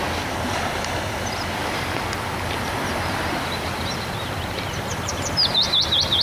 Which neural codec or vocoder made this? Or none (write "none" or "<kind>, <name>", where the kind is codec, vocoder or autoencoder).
vocoder, BigVGAN v2